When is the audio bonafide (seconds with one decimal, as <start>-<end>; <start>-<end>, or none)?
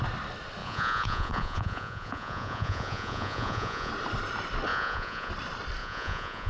0.0-0.6; 3.9-4.7; 5.3-5.8